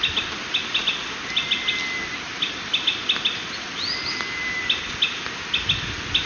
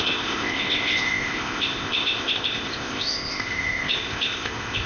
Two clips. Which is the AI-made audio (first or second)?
second